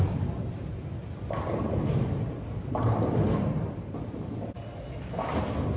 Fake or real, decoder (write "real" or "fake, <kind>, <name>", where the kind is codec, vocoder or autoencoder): real